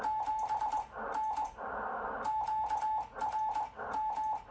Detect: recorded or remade recorded